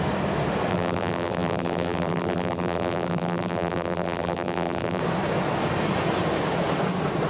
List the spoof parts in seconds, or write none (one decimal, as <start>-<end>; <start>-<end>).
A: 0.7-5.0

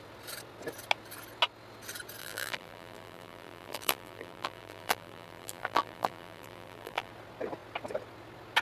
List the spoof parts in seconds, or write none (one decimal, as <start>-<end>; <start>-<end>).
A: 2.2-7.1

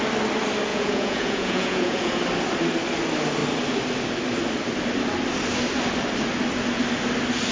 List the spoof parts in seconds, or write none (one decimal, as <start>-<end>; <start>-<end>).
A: 0.7-2.2